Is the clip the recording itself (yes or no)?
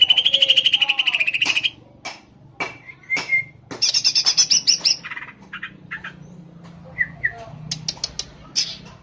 yes